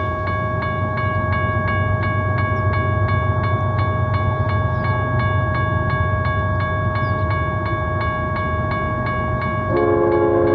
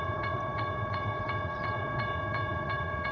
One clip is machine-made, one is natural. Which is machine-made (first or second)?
second